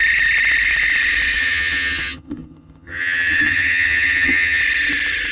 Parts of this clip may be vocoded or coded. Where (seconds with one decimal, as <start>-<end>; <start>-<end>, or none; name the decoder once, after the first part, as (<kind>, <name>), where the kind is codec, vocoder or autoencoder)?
1.4-4.6 (vocoder, HiFi-GAN)